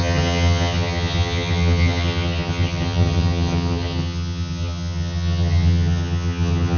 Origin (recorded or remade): remade